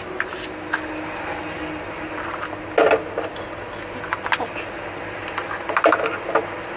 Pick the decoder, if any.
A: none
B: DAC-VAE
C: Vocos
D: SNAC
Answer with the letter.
A